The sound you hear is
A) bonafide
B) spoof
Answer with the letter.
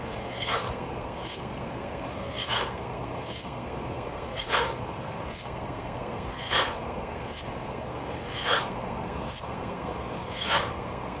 B